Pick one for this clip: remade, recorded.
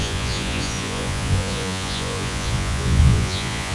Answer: remade